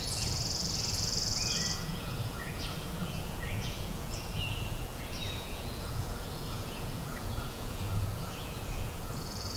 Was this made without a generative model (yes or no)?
no